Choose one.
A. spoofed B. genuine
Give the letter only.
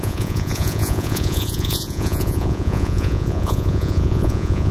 A